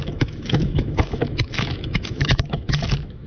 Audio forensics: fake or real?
fake